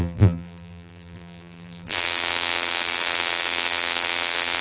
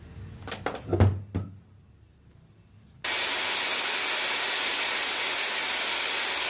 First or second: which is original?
second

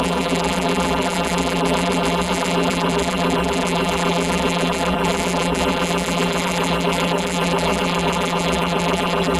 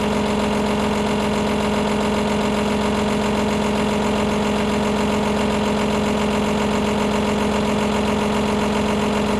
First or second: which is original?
second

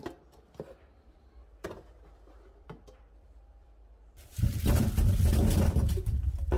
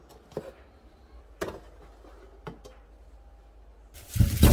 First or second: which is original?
second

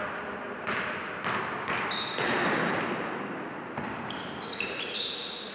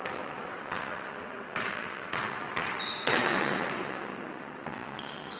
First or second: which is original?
first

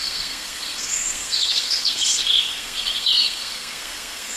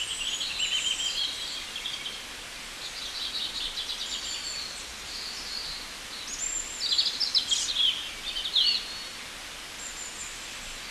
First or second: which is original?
second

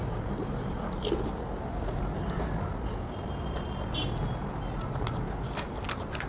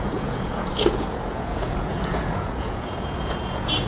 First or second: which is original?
first